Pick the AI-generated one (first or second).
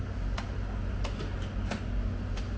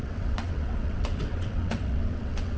second